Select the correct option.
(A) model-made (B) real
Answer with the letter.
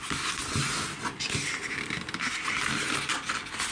B